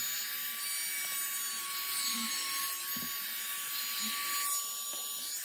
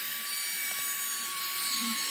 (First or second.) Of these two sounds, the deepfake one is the second